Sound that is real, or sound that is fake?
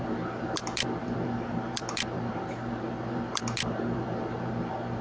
fake